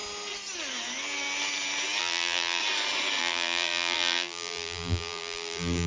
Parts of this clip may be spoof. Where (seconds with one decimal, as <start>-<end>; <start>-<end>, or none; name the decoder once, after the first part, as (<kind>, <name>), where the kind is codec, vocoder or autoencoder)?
2.0-2.6 (vocoder, BigVGAN v2); 3.2-5.9